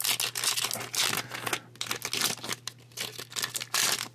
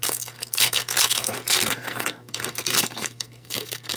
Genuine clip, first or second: first